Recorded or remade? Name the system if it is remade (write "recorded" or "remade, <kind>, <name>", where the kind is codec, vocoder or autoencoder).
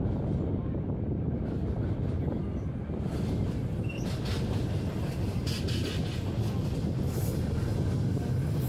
recorded